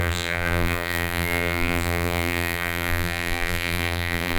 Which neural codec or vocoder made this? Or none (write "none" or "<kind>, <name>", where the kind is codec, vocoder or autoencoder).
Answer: vocoder, BigVGAN v2